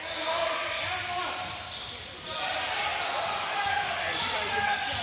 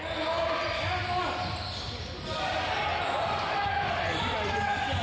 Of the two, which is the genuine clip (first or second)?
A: second